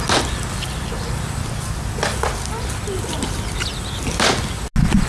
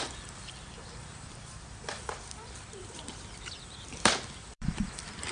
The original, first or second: first